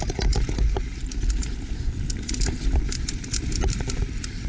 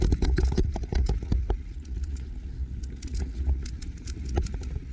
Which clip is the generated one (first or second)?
second